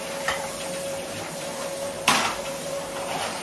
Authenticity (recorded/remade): remade